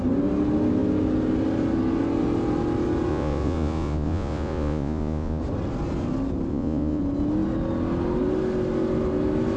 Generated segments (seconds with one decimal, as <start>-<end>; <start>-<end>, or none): 3.1-5.4; 6.5-7.0